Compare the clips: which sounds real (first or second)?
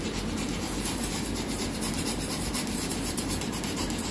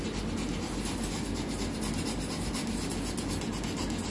second